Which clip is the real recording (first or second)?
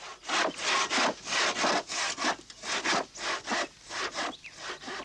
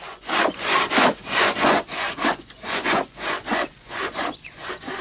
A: first